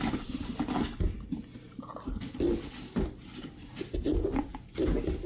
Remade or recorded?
recorded